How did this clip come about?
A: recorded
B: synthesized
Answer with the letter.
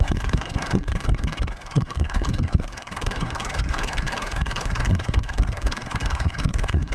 B